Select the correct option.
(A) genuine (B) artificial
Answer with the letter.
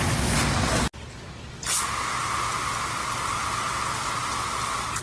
A